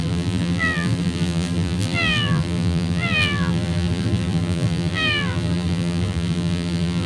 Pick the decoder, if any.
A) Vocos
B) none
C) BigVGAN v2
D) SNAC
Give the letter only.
C